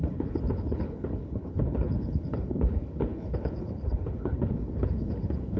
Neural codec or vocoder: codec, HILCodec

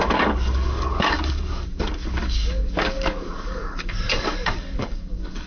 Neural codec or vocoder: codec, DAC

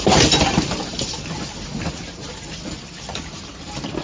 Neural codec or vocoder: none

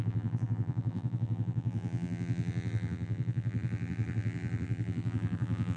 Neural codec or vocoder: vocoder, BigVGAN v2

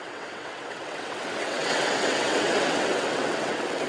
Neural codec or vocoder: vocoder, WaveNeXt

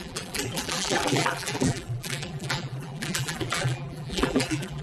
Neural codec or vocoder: vocoder, BigVGAN v2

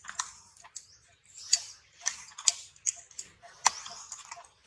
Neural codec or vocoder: none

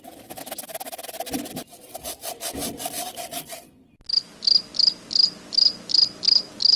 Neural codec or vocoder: none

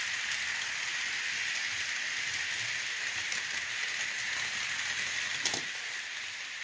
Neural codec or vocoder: none